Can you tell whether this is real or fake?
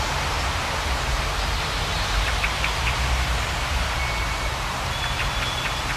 fake